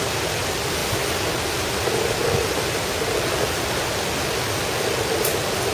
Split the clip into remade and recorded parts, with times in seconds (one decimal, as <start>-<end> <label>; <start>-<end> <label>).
0.0-5.7 recorded